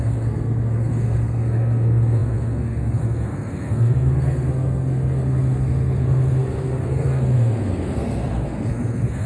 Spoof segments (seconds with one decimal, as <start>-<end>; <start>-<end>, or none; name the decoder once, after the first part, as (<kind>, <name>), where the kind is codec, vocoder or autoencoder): 0.0-9.3 (codec, SNAC)